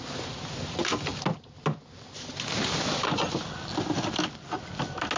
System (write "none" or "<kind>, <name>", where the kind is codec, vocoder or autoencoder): none